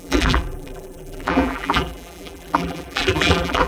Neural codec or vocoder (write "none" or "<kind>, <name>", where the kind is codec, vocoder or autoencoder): vocoder, BigVGAN v2